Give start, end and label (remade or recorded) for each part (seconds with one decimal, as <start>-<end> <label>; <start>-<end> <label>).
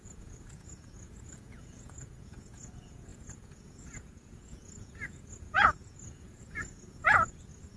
0.0-7.8 remade